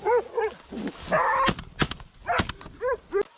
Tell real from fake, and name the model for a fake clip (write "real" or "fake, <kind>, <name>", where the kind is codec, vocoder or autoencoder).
real